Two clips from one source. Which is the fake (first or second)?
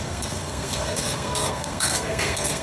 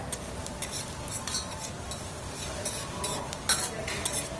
first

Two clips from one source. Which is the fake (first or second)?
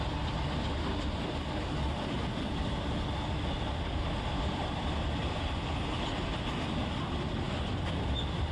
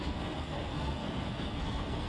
second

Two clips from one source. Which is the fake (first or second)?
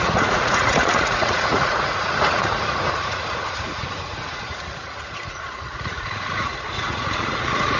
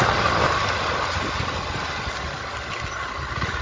first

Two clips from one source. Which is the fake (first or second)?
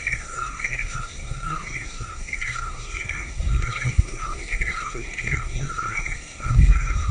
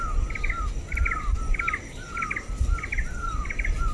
first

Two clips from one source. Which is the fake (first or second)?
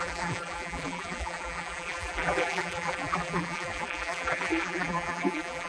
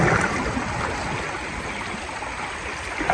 first